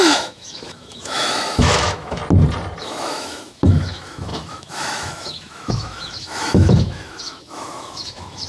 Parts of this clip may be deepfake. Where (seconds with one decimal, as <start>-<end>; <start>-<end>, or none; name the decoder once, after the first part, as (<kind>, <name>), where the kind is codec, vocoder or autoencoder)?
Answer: 0.0-2.2 (autoencoder, DAC-VAE); 2.8-8.5